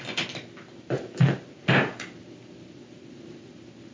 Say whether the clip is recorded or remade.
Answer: recorded